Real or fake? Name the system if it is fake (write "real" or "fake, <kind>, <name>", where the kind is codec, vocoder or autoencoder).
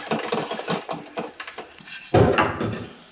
real